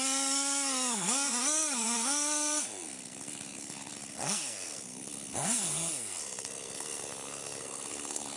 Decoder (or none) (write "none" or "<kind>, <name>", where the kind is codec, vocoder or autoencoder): codec, SNAC